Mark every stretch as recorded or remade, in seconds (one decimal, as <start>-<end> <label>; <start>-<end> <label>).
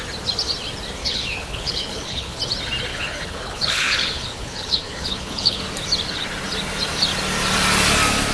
0.0-1.0 recorded; 1.0-2.4 remade; 2.4-2.9 recorded; 2.9-5.6 remade; 5.6-8.3 recorded